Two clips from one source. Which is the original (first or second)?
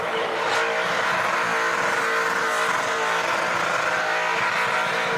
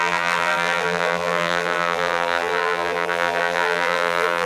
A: first